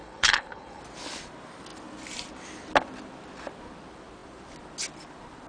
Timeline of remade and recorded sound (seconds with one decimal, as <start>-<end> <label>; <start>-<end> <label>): 0.0-0.8 remade; 0.8-5.5 recorded